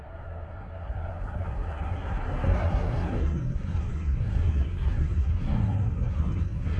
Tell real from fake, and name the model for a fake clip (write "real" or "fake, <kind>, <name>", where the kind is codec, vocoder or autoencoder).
fake, codec, SNAC